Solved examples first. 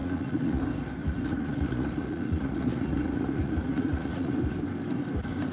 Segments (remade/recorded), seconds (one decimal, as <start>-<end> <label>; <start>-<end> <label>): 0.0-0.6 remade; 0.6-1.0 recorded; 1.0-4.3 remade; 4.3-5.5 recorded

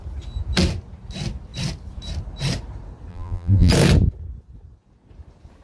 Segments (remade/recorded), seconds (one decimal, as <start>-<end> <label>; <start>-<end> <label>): 0.0-3.1 recorded; 3.1-3.7 remade; 3.7-5.6 recorded

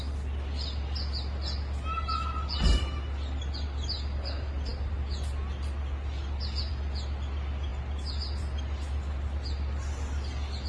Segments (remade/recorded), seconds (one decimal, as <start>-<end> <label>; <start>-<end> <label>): 0.0-10.7 recorded